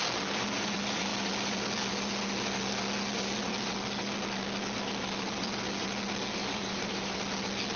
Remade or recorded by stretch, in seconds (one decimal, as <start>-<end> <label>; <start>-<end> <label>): 0.0-6.4 recorded; 6.4-7.1 remade; 7.1-7.8 recorded